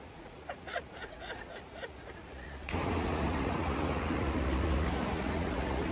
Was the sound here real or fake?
fake